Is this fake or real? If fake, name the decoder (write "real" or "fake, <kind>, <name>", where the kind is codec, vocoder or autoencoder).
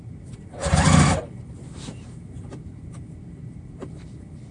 fake, vocoder, BigVGAN v2